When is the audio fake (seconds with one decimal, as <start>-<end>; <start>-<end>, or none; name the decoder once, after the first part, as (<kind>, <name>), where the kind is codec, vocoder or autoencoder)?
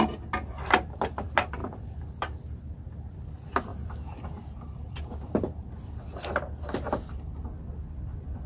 none